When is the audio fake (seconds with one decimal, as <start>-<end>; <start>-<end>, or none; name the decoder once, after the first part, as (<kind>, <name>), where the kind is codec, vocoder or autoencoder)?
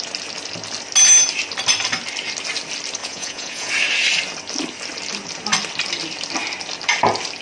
3.0-3.7 (vocoder, Vocos)